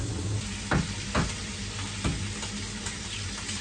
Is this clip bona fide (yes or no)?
yes